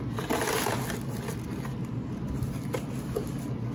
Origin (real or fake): real